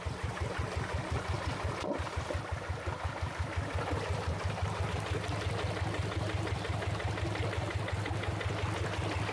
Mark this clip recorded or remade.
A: recorded